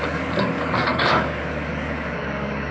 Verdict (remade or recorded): remade